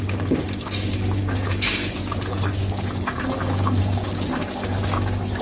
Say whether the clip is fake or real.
fake